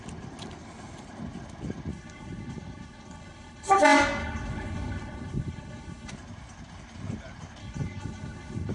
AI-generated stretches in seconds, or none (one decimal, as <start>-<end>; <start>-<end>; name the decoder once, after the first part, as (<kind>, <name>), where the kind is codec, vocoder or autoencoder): 1.9-3.8 (codec, HILCodec); 4.2-6.1; 7.6-8.7